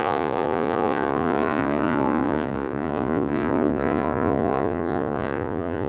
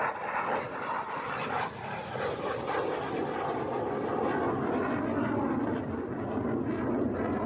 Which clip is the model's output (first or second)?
first